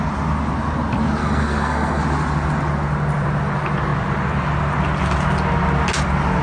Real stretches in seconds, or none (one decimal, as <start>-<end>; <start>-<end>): 0.0-1.2; 2.0-6.4